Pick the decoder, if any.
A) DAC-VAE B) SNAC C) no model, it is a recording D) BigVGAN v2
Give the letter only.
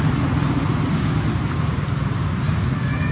C